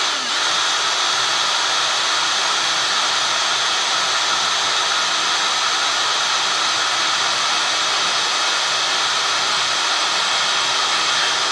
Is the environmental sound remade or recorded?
recorded